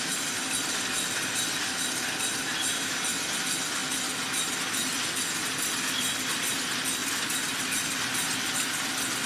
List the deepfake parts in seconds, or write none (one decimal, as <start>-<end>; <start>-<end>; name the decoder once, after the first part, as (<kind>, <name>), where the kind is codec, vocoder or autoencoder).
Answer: none